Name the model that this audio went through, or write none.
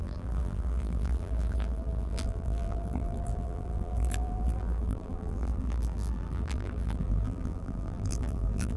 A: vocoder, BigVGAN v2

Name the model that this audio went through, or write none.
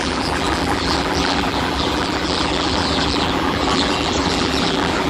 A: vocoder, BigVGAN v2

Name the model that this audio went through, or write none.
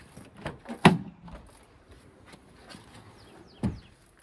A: none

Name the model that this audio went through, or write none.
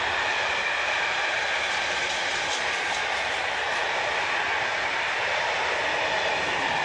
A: none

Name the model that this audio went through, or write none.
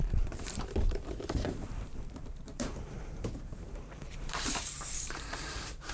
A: vocoder, BigVGAN v2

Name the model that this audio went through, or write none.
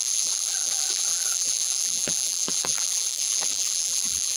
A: vocoder, BigVGAN v2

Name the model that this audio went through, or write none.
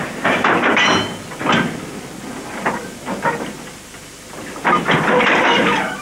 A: vocoder, BigVGAN v2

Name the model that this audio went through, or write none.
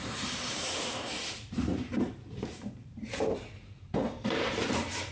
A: vocoder, BigVGAN v2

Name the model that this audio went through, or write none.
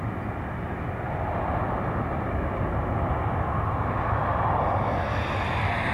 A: none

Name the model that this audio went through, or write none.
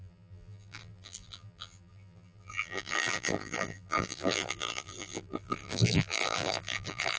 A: vocoder, BigVGAN v2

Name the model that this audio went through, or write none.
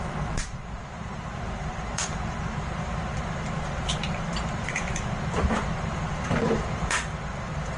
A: vocoder, BigVGAN v2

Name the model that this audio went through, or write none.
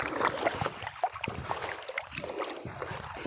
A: vocoder, BigVGAN v2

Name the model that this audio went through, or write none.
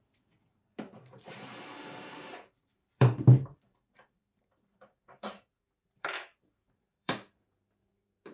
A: vocoder, BigVGAN v2